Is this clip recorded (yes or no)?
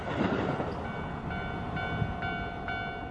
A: yes